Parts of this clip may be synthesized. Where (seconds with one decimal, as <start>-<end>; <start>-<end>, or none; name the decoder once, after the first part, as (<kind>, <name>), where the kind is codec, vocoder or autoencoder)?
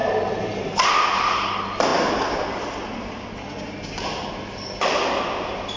none